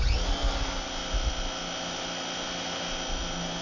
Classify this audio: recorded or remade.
recorded